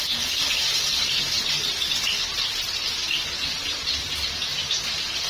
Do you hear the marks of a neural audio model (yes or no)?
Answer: no